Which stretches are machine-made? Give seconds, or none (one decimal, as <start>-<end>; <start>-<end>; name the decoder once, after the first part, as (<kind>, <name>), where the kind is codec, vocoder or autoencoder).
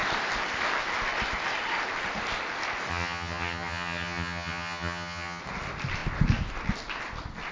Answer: 2.9-5.4 (vocoder, HiFi-GAN)